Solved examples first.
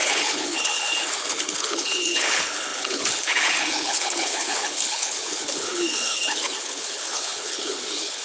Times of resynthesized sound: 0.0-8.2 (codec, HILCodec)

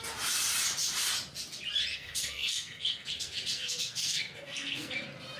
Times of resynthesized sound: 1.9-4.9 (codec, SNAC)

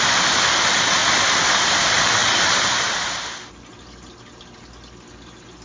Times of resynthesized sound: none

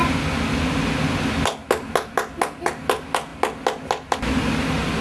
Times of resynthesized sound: none

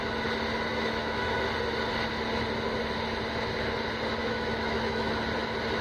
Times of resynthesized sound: 0.7-1.4 (autoencoder, DAC-VAE); 4.2-5.1